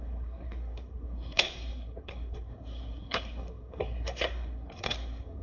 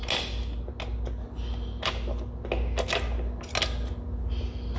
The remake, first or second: first